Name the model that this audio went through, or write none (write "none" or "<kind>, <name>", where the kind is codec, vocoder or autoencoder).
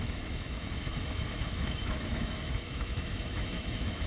autoencoder, DAC-VAE